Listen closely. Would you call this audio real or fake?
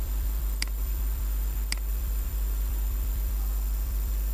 fake